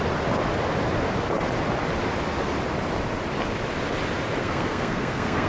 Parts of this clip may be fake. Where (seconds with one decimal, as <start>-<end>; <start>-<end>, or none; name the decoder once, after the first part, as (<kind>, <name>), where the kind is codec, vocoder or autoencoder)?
4.4-5.5 (codec, SNAC)